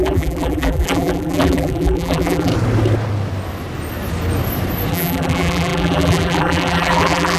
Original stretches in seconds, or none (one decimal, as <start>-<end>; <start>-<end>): 2.5-4.9